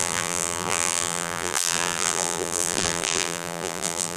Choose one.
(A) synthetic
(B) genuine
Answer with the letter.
A